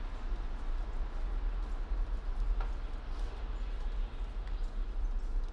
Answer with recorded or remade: recorded